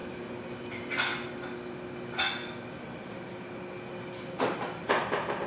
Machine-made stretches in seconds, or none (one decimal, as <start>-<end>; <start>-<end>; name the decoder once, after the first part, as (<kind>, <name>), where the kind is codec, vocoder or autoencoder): none